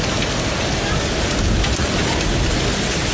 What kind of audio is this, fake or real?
real